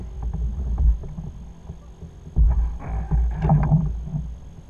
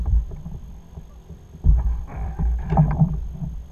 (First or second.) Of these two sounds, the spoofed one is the second